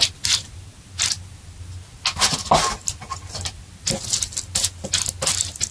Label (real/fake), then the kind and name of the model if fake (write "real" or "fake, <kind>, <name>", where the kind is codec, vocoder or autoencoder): real